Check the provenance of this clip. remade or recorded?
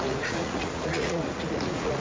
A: remade